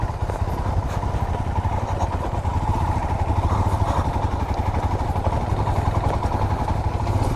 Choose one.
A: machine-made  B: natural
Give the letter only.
B